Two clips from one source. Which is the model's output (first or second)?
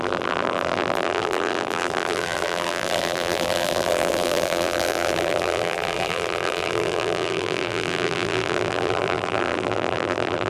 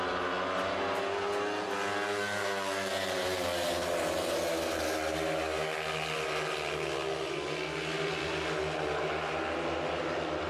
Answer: first